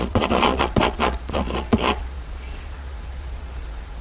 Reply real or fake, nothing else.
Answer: fake